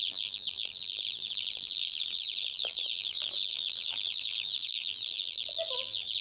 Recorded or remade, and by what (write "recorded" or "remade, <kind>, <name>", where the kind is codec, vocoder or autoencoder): remade, vocoder, BigVGAN v2